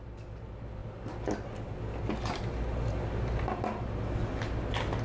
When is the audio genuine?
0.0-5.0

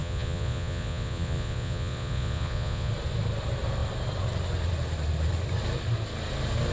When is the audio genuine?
2.9-6.7

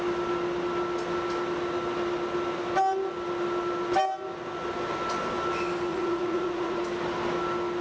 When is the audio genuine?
0.0-5.9; 6.8-7.8